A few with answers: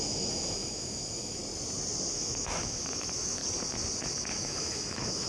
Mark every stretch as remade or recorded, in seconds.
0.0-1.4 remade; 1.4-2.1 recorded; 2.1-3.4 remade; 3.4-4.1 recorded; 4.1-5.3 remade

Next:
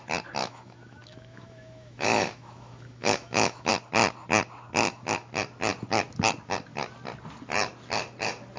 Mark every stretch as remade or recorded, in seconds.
0.0-0.4 recorded; 0.4-3.7 remade; 3.7-8.6 recorded